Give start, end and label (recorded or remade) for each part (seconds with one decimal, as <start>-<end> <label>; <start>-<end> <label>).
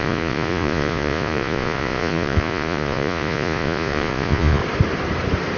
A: 0.0-4.6 remade; 4.6-5.6 recorded